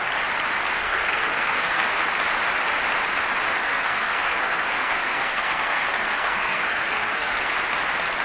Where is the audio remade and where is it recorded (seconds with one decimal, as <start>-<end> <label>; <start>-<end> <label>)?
0.0-0.8 recorded; 0.8-2.0 remade; 2.0-3.6 recorded; 3.6-7.5 remade; 7.5-8.2 recorded